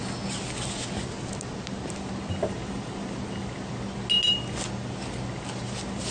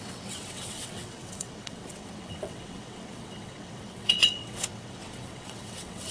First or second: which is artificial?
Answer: second